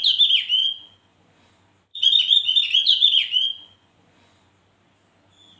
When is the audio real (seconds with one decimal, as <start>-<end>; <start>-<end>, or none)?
0.0-0.6; 1.5-1.9; 4.5-5.6